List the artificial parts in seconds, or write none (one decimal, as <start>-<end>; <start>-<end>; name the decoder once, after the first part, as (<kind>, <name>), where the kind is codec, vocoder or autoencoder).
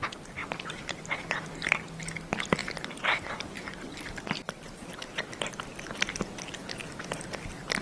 0.4-1.8 (vocoder, BigVGAN v2); 6.8-7.8